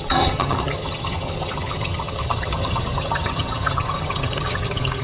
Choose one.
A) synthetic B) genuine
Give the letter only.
A